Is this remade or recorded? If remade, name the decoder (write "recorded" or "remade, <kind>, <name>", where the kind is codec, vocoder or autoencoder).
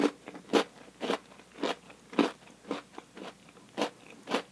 recorded